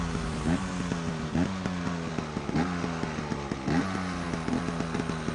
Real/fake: real